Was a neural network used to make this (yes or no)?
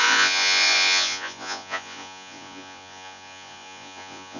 yes